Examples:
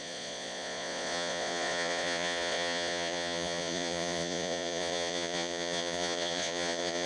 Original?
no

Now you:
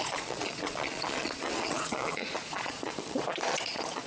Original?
no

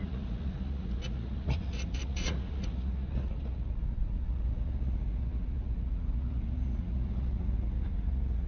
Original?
no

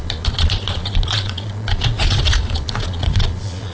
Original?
no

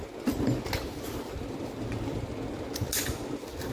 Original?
yes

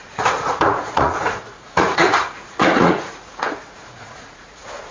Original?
no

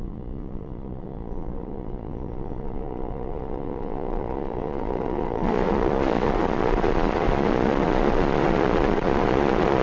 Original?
no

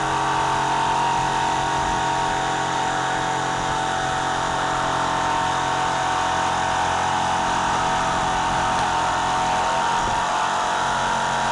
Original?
yes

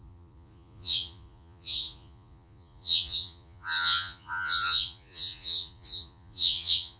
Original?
no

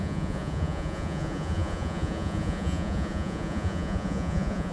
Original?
no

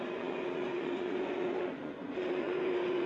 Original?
no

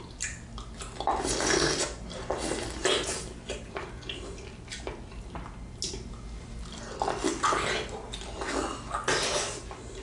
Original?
yes